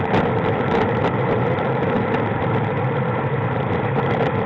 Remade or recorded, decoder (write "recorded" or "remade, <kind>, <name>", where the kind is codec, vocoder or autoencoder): remade, vocoder, BigVGAN v2